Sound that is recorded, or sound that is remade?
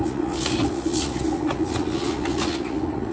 remade